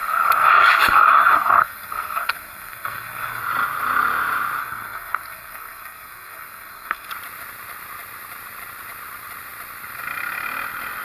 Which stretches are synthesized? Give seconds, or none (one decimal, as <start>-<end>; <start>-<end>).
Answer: 0.0-3.4; 4.6-7.1